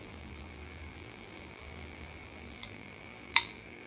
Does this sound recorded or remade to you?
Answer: remade